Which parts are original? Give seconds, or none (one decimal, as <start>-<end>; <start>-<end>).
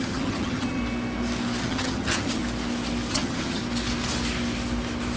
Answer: 0.8-1.6; 2.4-3.1; 3.6-5.2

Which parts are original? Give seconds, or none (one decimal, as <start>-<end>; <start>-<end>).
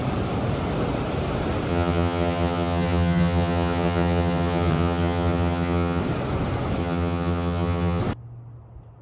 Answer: 0.0-1.7; 6.0-6.8; 8.0-9.0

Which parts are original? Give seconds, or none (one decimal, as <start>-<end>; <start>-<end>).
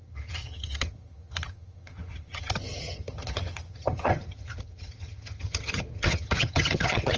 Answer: none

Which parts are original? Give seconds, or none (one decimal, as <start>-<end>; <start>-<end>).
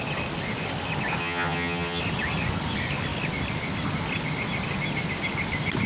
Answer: 0.0-1.2; 2.0-5.9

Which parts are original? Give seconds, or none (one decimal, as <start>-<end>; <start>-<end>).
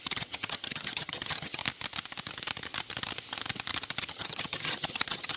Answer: 1.6-4.0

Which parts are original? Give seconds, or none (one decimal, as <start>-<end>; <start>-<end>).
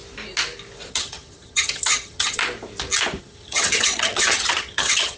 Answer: 0.0-0.9; 2.4-3.2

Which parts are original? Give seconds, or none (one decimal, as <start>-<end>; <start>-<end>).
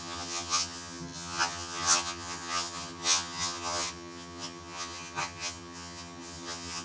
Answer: none